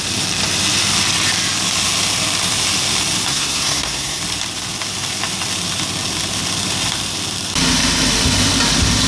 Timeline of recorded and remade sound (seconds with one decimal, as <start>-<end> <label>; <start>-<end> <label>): 0.0-3.3 recorded; 3.3-4.2 remade; 4.2-9.1 recorded